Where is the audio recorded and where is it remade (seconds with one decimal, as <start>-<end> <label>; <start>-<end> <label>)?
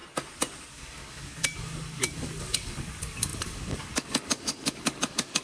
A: 0.0-0.7 recorded; 0.7-5.4 remade